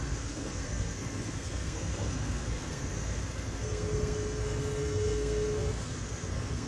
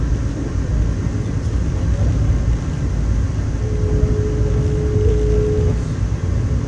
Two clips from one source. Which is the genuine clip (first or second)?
second